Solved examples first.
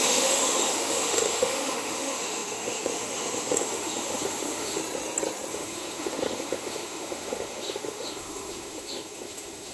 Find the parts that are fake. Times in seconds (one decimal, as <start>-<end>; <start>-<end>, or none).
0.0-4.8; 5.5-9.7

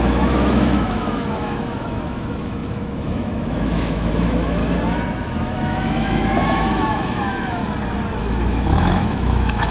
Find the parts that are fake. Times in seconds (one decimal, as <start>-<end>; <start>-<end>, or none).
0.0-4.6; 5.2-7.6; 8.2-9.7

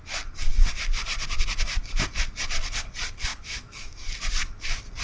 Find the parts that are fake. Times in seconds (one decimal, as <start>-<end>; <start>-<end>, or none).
3.3-4.1

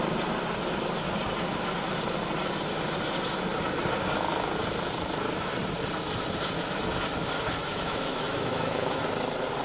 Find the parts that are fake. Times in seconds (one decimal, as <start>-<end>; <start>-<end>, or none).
7.7-9.0

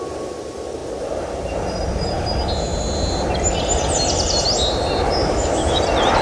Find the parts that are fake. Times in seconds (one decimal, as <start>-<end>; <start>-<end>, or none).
5.2-5.8

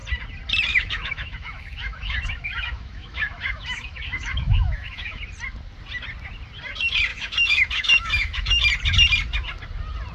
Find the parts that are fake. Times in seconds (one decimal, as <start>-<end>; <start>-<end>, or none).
0.7-5.2; 7.1-8.6